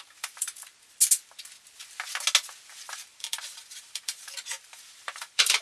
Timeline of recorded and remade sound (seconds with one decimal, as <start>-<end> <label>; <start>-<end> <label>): 0.0-0.7 remade; 0.7-2.7 recorded; 2.7-5.6 remade